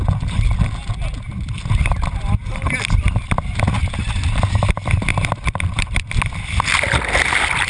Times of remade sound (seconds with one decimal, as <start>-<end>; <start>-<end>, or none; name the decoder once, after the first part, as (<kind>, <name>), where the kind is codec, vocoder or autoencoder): 5.1-6.1 (vocoder, BigVGAN v2)